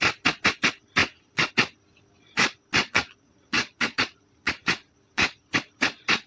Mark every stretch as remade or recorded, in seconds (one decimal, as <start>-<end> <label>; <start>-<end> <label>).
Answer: 0.0-1.0 recorded; 1.0-1.5 remade; 1.5-2.8 recorded; 2.8-5.5 remade; 5.5-6.3 recorded